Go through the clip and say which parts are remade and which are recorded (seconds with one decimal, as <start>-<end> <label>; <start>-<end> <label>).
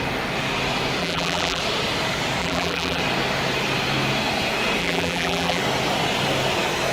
0.0-1.0 recorded; 1.0-1.6 remade; 1.6-2.4 recorded; 2.4-3.0 remade; 3.0-4.8 recorded; 4.8-5.6 remade; 5.6-6.9 recorded